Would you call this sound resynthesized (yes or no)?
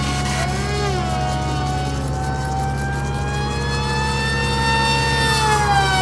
no